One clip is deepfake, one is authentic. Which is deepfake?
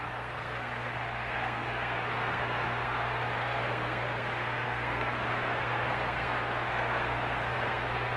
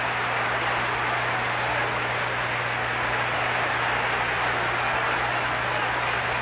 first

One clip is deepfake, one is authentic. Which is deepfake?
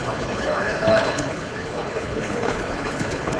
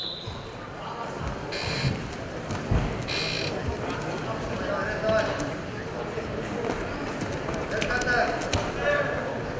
first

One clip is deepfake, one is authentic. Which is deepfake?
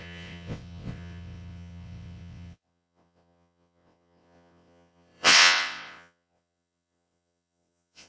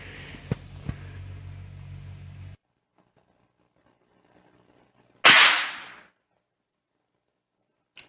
first